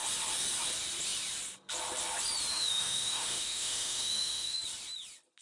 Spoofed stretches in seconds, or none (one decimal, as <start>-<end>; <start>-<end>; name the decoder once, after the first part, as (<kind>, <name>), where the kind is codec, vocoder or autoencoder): 2.5-4.6 (autoencoder, DAC-VAE)